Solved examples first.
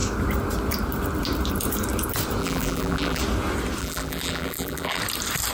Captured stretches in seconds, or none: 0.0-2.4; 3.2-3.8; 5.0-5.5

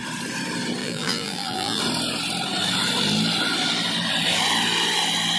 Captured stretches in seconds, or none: 0.0-0.8; 1.8-5.4

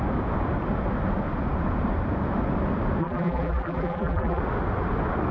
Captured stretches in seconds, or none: 0.0-3.0; 4.4-5.3